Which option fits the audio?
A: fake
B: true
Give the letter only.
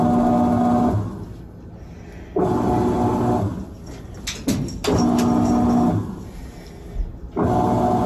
B